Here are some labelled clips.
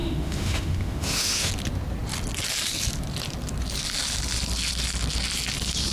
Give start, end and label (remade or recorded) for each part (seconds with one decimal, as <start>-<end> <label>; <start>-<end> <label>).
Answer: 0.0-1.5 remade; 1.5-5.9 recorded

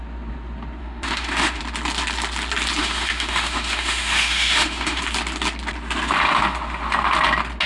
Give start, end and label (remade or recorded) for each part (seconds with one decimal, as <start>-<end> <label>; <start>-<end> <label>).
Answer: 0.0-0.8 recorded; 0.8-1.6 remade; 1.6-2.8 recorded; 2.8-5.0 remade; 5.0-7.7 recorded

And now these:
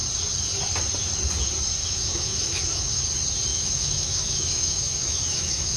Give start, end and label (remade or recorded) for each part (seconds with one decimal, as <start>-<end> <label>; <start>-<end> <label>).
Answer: 0.0-1.8 recorded; 1.8-3.0 remade; 3.0-3.5 recorded; 3.5-5.8 remade

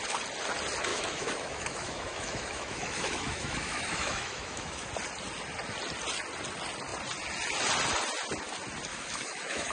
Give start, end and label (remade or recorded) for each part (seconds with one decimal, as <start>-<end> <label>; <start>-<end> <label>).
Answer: 0.0-0.9 recorded; 0.9-4.9 remade; 4.9-8.9 recorded; 8.9-9.7 remade

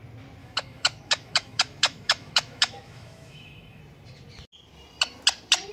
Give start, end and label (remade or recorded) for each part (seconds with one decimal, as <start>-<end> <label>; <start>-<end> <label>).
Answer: 0.0-0.4 recorded; 0.4-3.8 remade; 3.8-5.7 recorded